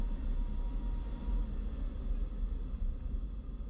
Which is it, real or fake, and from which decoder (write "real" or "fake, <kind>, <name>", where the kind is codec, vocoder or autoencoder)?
real